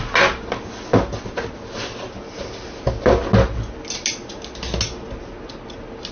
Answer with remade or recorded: recorded